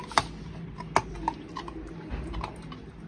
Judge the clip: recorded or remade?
recorded